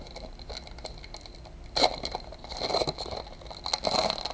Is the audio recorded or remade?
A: recorded